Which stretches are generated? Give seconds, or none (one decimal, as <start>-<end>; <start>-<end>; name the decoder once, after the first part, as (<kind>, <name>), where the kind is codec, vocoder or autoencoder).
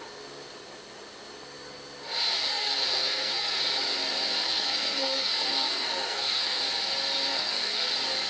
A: 2.4-3.6 (codec, SNAC); 4.4-6.6; 7.3-7.8